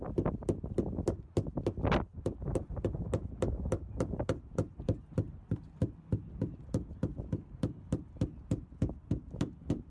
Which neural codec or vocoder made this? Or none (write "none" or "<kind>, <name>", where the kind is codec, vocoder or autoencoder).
none